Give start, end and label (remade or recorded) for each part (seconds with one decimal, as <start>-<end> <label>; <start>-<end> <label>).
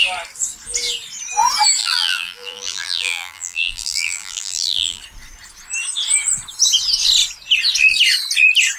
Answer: 0.0-1.8 recorded; 1.8-5.0 remade; 5.0-8.8 recorded